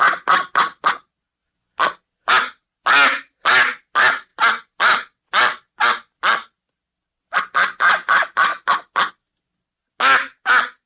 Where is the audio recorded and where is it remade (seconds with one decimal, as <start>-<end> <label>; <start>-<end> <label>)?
0.0-10.9 recorded